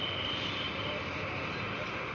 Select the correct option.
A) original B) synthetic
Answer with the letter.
A